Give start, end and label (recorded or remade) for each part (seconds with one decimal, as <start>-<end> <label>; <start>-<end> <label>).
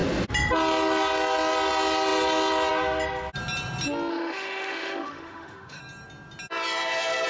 0.0-4.1 recorded; 4.1-5.8 remade; 5.8-7.3 recorded